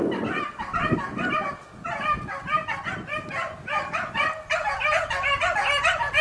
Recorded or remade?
recorded